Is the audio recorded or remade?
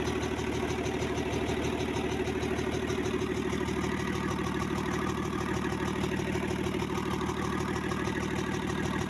recorded